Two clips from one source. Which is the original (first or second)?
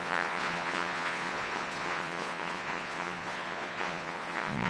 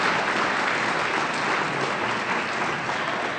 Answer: second